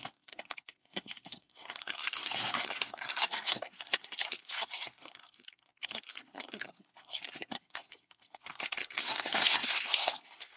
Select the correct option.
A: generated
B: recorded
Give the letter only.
A